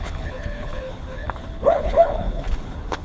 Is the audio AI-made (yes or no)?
yes